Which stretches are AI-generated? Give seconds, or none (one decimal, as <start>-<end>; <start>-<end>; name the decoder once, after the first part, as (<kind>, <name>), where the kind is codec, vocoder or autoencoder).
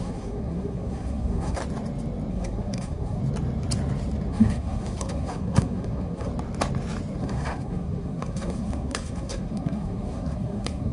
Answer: 0.0-1.6 (codec, SNAC); 2.3-3.2; 4.3-6.3; 7.2-10.9